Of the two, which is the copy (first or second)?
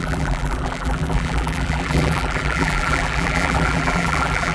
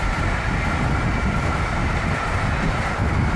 first